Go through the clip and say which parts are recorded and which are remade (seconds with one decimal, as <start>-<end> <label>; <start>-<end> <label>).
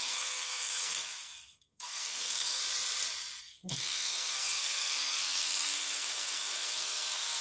0.0-2.6 remade; 2.6-3.4 recorded; 3.4-7.4 remade